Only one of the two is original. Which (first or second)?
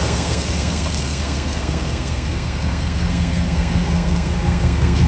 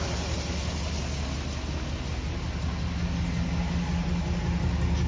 second